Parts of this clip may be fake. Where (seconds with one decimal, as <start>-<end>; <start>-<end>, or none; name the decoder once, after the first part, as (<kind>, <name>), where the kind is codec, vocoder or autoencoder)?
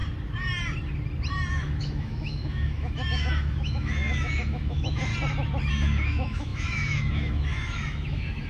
1.5-5.1 (autoencoder, DAC-VAE); 5.7-8.5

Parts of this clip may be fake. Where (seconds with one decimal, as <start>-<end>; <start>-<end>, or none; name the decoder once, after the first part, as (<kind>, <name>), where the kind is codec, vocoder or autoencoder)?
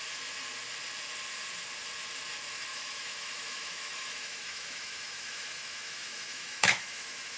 2.7-7.4 (autoencoder, DAC-VAE)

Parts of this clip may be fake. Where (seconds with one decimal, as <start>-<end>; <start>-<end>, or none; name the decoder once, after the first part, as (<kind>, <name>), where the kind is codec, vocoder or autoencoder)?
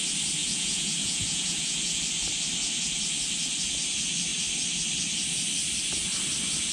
0.4-2.0 (vocoder, Vocos)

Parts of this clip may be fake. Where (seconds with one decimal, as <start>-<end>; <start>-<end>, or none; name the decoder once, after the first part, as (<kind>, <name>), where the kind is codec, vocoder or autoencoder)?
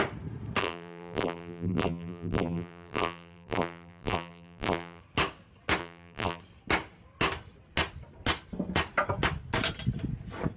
0.6-5.0 (vocoder, BigVGAN v2); 5.8-6.4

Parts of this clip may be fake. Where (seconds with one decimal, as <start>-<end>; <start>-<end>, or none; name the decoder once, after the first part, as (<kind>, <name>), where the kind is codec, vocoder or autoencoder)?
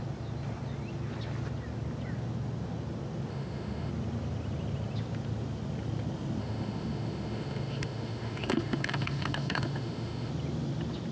3.3-3.9 (autoencoder, DAC-VAE); 6.4-10.3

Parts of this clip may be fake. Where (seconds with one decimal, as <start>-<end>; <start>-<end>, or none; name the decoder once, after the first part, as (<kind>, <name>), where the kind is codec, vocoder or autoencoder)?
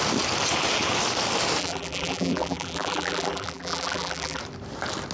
1.6-4.4 (vocoder, BigVGAN v2)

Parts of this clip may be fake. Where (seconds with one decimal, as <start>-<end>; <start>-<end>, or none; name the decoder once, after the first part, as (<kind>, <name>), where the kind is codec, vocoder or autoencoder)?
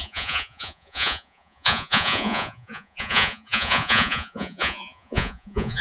0.0-5.8 (vocoder, Vocos)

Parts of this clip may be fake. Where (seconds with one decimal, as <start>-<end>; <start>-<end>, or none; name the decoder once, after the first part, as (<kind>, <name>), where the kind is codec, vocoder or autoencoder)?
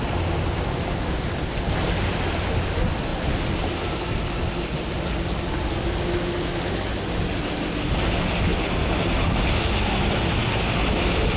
none